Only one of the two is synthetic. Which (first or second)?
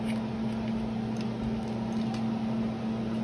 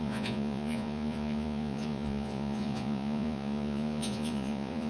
second